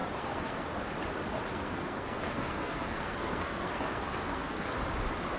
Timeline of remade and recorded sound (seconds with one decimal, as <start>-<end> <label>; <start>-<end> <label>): 0.0-0.7 remade; 0.7-1.5 recorded; 1.5-4.7 remade; 4.7-5.4 recorded